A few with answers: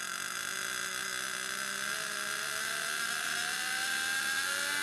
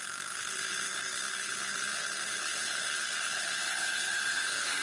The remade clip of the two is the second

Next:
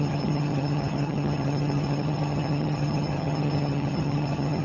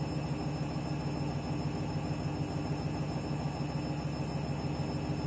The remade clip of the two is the first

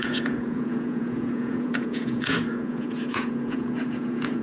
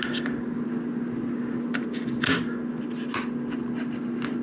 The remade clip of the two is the first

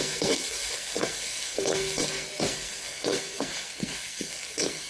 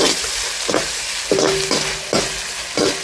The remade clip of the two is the first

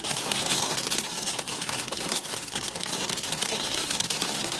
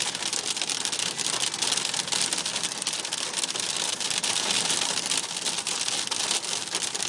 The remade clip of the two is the first